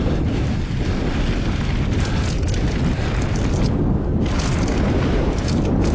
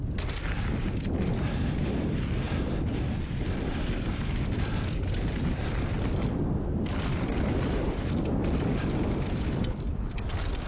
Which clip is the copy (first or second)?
second